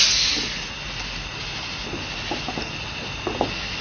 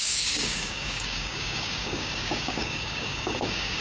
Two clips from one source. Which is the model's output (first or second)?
second